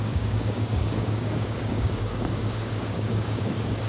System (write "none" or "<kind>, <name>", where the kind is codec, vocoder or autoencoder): codec, DAC